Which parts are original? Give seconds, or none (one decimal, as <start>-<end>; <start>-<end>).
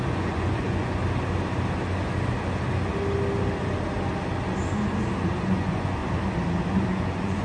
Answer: 1.0-5.4; 6.0-6.9